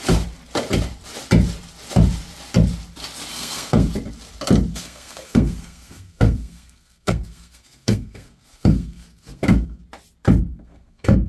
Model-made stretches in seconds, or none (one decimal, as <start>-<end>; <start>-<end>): 3.3-3.9; 4.7-9.8; 10.5-11.3